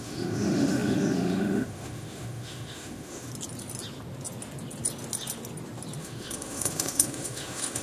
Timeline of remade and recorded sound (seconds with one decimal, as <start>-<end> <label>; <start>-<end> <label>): 0.0-3.3 remade; 3.3-6.0 recorded; 6.0-7.8 remade